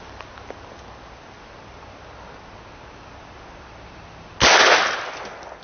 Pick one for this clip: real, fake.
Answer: real